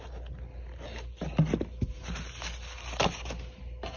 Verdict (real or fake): real